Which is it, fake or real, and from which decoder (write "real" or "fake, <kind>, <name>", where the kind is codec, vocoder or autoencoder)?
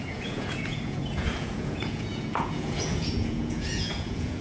fake, vocoder, Vocos